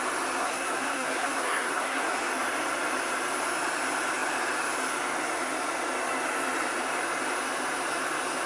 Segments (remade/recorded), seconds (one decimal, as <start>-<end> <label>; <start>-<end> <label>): 0.0-0.4 recorded; 0.4-2.3 remade; 2.3-8.5 recorded